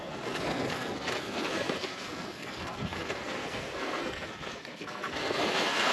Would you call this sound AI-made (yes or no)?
yes